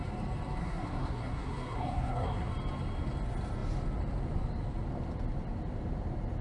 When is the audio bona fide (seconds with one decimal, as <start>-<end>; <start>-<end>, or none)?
0.0-0.6; 2.5-6.4